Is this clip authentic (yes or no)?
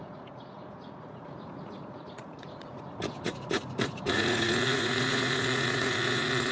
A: no